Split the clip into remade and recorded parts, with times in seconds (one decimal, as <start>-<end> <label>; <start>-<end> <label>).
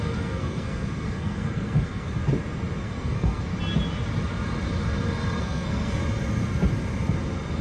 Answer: 0.0-2.2 remade; 2.2-2.8 recorded; 2.8-3.5 remade; 3.5-5.4 recorded; 5.4-6.0 remade; 6.0-7.6 recorded